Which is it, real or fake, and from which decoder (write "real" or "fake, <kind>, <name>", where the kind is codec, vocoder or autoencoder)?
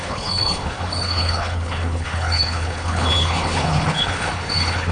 fake, codec, HILCodec